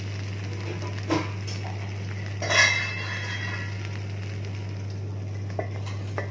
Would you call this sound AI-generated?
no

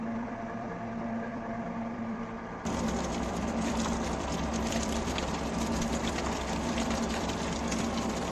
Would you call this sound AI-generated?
yes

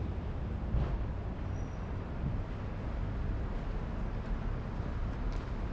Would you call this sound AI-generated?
no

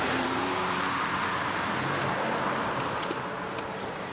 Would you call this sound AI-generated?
yes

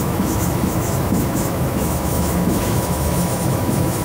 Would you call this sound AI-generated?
yes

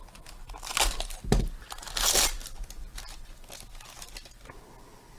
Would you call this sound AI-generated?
no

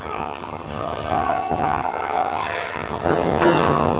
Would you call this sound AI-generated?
yes